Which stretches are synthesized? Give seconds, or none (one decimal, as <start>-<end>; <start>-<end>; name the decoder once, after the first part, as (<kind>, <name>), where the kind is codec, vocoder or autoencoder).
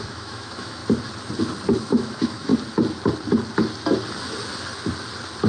0.0-0.8 (autoencoder, DAC-VAE); 1.8-2.5